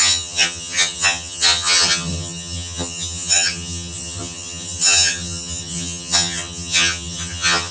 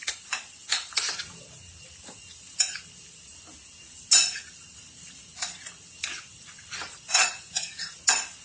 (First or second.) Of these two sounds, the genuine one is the second